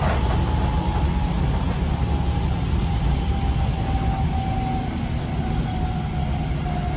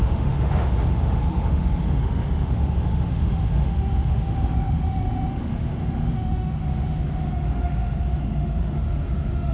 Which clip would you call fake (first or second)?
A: second